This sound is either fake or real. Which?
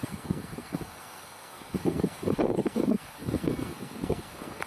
fake